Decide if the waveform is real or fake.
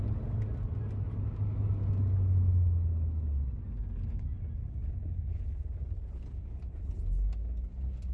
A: real